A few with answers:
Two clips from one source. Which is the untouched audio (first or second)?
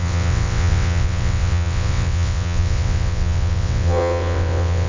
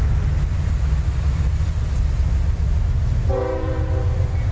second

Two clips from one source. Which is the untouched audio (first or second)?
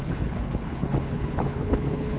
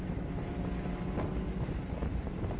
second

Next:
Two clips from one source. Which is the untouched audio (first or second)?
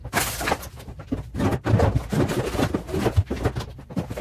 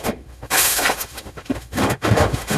first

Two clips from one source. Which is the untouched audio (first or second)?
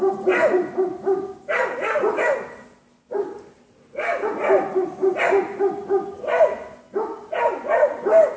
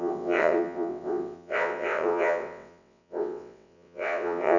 first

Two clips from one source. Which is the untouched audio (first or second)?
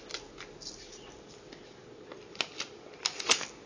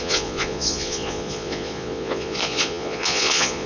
first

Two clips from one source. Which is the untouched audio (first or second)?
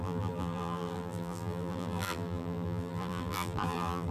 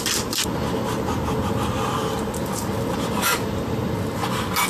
second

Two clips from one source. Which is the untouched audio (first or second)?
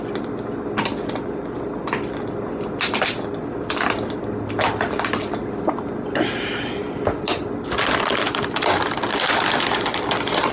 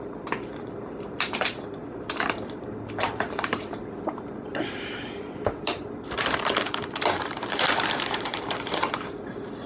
first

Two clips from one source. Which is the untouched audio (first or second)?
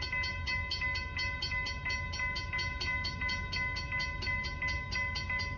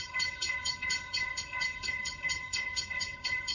first